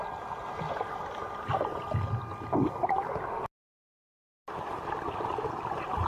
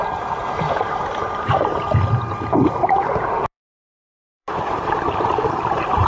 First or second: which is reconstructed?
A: second